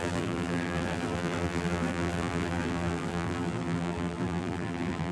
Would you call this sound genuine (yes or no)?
no